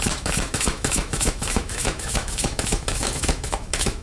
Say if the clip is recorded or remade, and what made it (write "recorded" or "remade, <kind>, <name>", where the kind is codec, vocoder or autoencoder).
remade, autoencoder, DAC-VAE